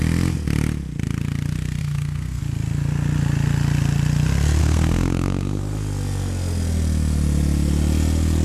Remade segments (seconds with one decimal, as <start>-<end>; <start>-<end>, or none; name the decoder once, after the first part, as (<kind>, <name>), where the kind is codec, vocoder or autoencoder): 1.8-2.4 (codec, SNAC); 4.6-5.6